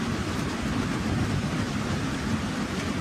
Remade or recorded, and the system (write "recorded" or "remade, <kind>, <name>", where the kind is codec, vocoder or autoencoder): recorded